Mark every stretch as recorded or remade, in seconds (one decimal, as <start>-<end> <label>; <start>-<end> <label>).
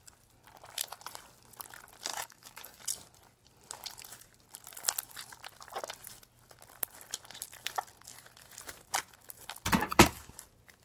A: 0.0-2.1 recorded; 2.1-2.8 remade; 2.8-9.8 recorded; 9.8-10.4 remade; 10.4-10.8 recorded